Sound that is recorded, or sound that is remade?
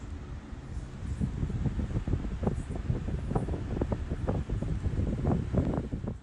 recorded